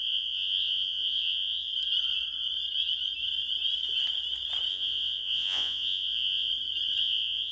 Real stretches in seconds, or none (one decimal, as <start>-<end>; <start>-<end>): 1.7-4.7; 6.5-7.0